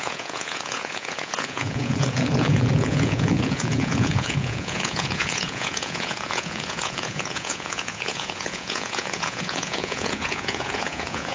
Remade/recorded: remade